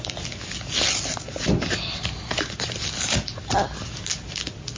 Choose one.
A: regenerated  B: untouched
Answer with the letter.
B